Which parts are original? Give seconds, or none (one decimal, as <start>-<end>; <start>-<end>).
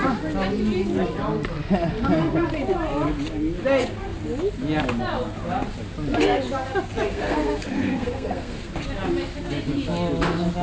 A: 0.0-7.1; 8.7-10.6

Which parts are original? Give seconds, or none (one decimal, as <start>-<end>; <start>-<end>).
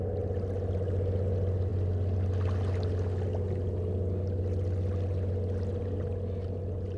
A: 0.0-7.0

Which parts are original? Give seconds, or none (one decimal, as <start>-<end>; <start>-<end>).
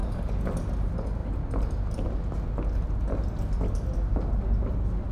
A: 0.0-5.1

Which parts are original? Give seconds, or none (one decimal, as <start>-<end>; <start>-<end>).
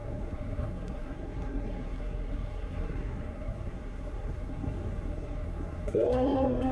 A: none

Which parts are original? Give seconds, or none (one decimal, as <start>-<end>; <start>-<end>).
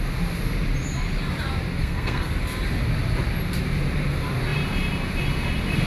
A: 0.0-1.8; 2.3-5.9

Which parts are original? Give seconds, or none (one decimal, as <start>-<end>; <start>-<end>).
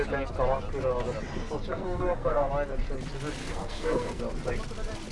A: 0.0-1.7; 2.5-3.4; 4.2-5.1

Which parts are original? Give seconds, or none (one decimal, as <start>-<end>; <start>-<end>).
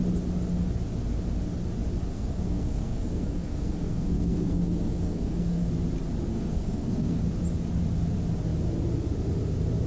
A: 0.0-2.1; 5.7-6.3; 7.2-9.9